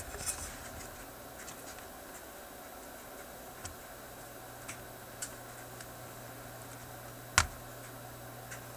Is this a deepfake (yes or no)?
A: no